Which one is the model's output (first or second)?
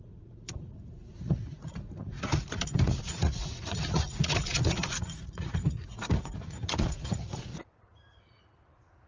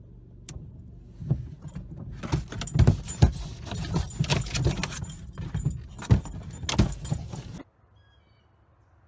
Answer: first